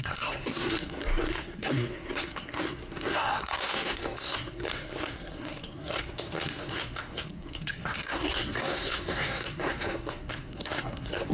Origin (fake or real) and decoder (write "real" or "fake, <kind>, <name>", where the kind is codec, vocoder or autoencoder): fake, codec, SNAC